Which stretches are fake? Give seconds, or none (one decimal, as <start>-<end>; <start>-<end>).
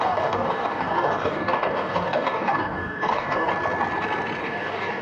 0.0-3.5; 4.4-5.0